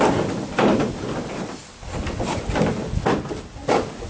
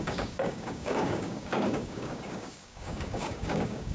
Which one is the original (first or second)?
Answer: first